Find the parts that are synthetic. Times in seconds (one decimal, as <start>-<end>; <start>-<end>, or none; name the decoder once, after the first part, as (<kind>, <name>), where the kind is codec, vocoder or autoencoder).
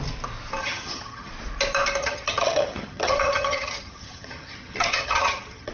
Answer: 0.6-1.3 (vocoder, HiFi-GAN); 2.0-5.7